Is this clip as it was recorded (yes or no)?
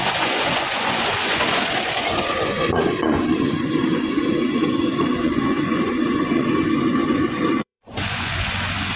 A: no